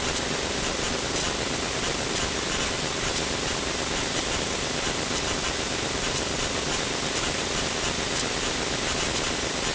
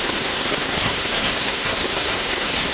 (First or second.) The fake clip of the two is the second